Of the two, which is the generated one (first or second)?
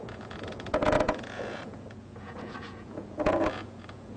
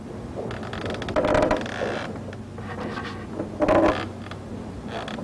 first